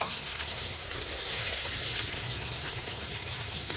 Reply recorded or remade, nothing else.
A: remade